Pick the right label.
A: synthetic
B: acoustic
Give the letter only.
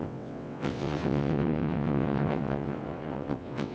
A